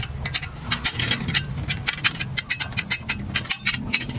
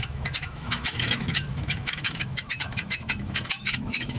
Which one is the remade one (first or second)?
second